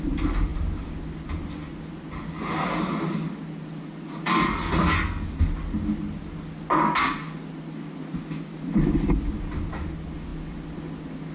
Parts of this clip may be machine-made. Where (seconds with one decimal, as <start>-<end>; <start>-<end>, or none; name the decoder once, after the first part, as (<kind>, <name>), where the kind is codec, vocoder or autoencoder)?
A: none